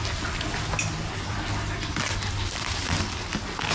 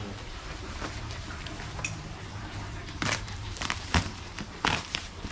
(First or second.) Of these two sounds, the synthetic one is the second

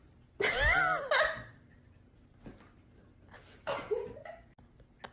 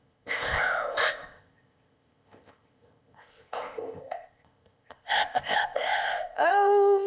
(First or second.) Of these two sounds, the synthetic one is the second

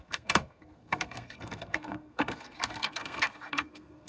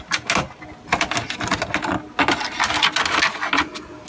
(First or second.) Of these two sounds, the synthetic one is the first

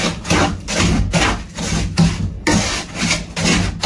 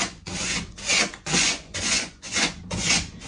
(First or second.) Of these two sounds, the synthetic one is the second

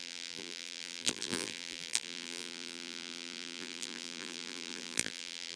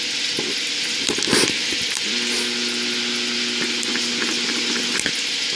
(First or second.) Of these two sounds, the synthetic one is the first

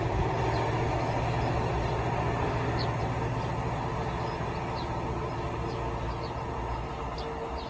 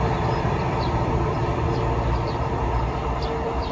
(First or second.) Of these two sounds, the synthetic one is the second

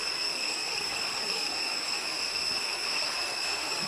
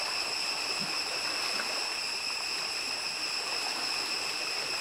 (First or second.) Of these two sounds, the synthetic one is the first